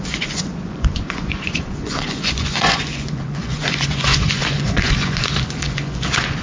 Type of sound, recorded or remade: remade